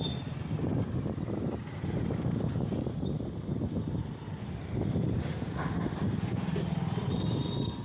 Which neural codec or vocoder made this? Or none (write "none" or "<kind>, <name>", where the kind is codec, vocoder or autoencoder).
none